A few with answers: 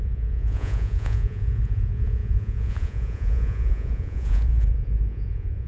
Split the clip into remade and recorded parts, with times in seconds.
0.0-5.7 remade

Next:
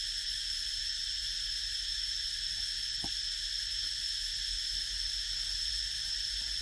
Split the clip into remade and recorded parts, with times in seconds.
0.0-6.6 recorded

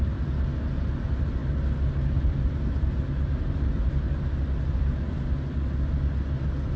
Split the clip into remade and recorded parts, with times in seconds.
0.0-6.8 recorded

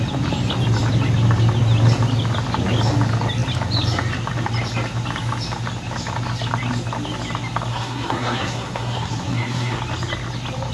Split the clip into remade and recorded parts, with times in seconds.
0.0-7.7 recorded; 7.7-9.8 remade; 9.8-10.7 recorded

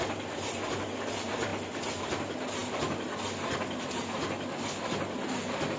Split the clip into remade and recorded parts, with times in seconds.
0.0-5.8 recorded

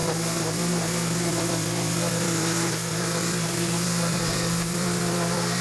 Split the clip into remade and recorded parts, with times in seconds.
0.0-1.3 recorded; 1.3-5.6 remade